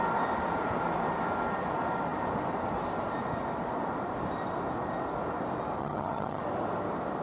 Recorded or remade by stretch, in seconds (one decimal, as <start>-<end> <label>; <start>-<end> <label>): 0.0-5.8 recorded; 5.8-6.4 remade; 6.4-7.2 recorded